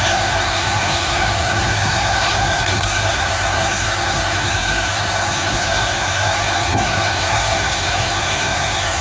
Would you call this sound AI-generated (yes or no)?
yes